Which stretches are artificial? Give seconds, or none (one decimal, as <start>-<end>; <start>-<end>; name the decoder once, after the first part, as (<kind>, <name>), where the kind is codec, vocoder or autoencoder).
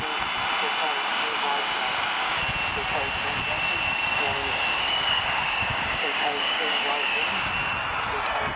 1.1-2.4 (codec, DAC); 4.4-7.5